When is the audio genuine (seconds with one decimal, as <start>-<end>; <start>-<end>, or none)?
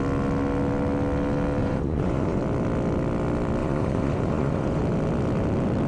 0.0-1.6; 2.4-3.6; 4.8-5.9